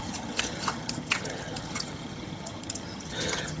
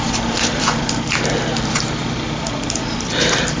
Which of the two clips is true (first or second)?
second